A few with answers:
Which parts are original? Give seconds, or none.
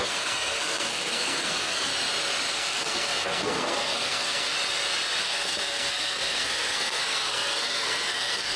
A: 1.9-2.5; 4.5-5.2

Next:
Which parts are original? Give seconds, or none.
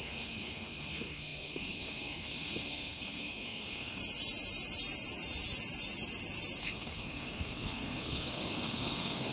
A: 4.0-6.6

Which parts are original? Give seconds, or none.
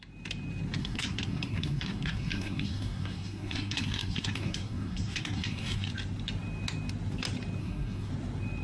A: 0.0-0.8; 5.9-7.6; 8.1-8.6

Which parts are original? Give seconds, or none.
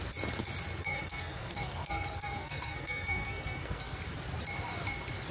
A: 0.0-0.8; 4.0-5.3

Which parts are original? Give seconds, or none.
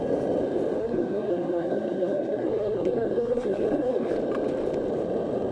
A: 0.0-0.8; 4.1-5.5